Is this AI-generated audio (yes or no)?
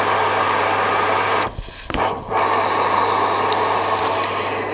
no